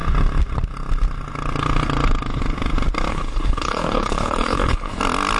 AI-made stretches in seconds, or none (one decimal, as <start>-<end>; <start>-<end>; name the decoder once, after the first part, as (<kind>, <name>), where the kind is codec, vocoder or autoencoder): 3.1-5.0 (codec, HILCodec)